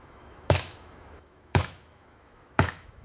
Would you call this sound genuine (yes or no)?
no